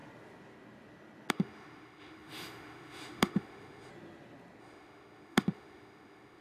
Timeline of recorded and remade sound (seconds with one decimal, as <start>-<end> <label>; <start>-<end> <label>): 0.0-1.3 recorded; 1.3-3.9 remade; 3.9-4.6 recorded; 4.6-6.4 remade